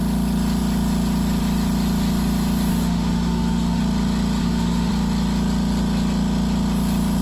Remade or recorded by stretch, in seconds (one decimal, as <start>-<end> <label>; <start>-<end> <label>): 0.0-2.7 recorded; 2.7-3.8 remade; 3.8-4.4 recorded; 4.4-4.9 remade; 4.9-7.2 recorded